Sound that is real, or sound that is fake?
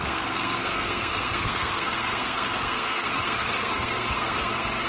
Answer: fake